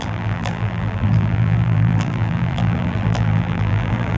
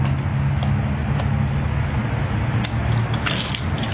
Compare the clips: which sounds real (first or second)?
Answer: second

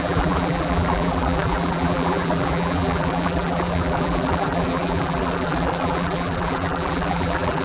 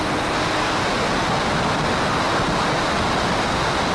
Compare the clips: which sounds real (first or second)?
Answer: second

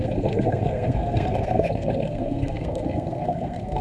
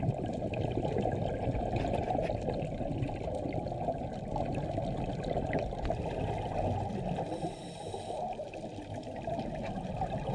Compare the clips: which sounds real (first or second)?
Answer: second